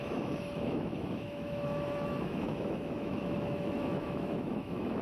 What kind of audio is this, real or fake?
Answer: fake